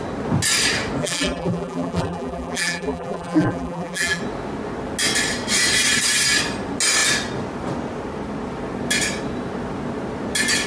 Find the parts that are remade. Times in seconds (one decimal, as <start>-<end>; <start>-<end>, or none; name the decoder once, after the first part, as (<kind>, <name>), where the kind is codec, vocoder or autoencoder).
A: 1.0-4.2 (vocoder, BigVGAN v2)